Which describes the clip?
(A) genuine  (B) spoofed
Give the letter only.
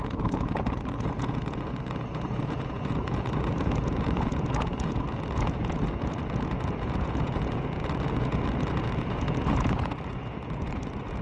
B